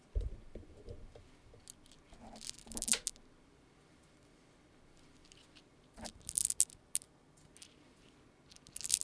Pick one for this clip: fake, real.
real